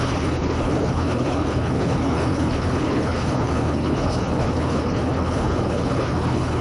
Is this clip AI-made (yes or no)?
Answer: yes